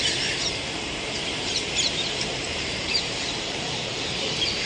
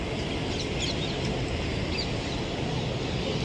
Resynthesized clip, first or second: first